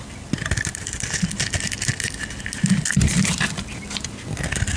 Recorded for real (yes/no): yes